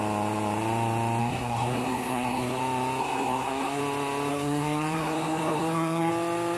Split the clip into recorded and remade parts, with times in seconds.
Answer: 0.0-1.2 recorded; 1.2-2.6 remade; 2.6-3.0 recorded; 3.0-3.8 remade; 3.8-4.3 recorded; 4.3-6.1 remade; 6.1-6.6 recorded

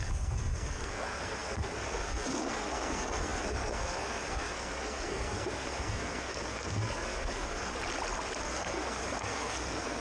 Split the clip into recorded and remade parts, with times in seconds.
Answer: 0.0-7.7 remade; 7.7-8.4 recorded; 8.4-10.0 remade